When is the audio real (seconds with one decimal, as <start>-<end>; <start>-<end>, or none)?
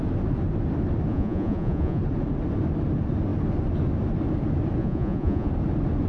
0.0-1.1; 2.0-4.8; 5.5-6.1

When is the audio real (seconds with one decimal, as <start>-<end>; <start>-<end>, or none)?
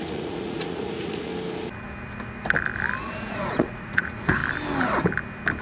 1.3-3.0; 4.4-5.6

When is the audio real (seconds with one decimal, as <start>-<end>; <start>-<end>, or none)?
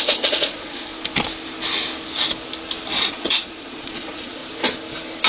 0.9-2.9; 4.4-5.3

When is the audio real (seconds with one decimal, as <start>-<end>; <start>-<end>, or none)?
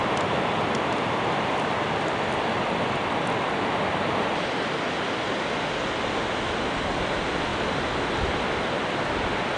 0.0-9.6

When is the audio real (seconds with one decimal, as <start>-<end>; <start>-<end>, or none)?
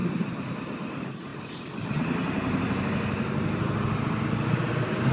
0.0-5.1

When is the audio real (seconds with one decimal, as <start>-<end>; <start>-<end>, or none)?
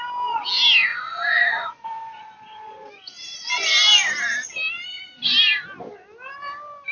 0.0-0.9; 2.9-6.9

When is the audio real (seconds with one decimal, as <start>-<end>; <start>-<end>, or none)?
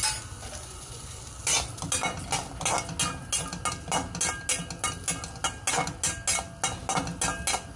0.0-0.6; 1.2-7.8